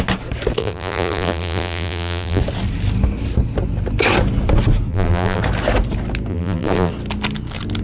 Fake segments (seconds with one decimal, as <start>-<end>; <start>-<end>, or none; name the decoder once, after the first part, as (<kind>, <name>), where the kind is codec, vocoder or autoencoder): 0.6-2.4 (vocoder, BigVGAN v2); 4.9-5.4; 6.3-6.9